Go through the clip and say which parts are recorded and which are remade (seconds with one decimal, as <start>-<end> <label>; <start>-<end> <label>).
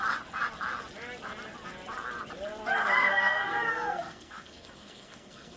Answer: 0.0-3.0 recorded; 3.0-5.6 remade